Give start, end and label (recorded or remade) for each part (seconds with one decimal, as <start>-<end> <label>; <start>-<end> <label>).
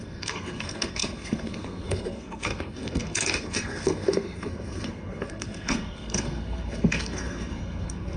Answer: 0.0-8.2 remade